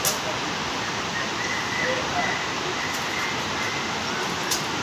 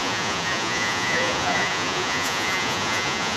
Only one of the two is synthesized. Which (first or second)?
second